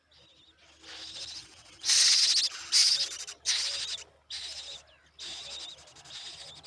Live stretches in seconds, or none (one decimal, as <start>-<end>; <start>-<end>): 0.0-1.4; 2.2-6.7